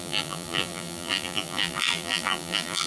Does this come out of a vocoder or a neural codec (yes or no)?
yes